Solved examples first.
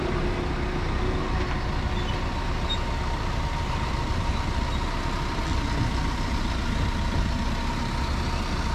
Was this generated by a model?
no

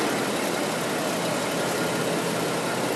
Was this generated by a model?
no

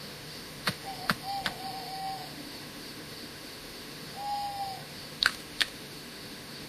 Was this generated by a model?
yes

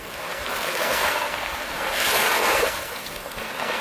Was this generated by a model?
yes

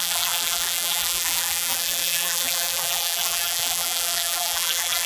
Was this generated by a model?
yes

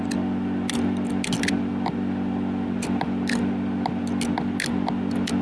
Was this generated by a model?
no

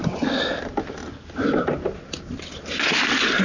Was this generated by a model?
no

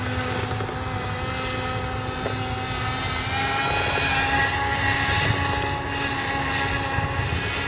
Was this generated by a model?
no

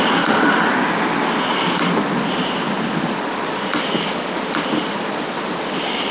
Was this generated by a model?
no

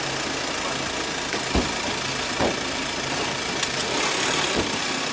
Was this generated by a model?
no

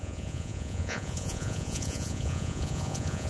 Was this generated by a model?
yes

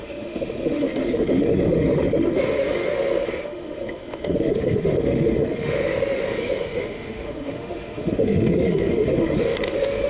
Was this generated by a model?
yes